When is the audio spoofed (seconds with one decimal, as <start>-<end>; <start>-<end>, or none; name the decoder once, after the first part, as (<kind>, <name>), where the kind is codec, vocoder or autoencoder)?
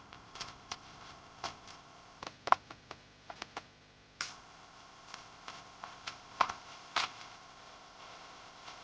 0.0-2.2 (codec, ZipCodec); 4.3-8.8